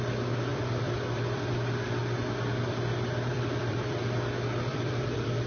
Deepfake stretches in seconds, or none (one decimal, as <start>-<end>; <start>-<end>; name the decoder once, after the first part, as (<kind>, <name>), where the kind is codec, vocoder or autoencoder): 0.5-1.5 (vocoder, BigVGAN v2); 3.3-4.0; 4.7-5.5